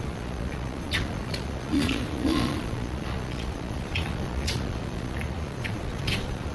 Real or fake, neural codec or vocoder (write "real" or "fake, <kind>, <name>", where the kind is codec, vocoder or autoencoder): fake, vocoder, Vocos